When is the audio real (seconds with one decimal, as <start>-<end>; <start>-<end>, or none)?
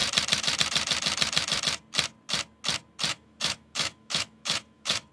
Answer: 0.0-3.1